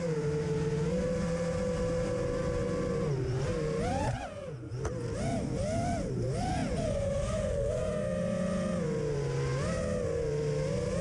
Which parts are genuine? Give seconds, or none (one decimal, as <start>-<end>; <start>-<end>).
0.0-3.9; 4.7-6.6; 8.0-11.0